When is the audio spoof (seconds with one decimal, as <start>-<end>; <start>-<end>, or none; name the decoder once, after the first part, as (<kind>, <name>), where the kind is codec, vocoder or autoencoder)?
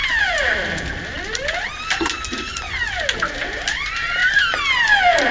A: 4.2-5.3 (vocoder, BigVGAN v2)